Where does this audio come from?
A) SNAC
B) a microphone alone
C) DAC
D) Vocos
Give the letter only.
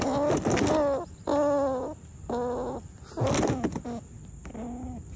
B